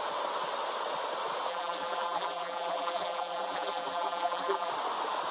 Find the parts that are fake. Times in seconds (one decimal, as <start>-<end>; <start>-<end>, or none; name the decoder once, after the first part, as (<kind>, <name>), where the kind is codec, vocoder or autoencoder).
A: 1.5-4.7 (vocoder, BigVGAN v2)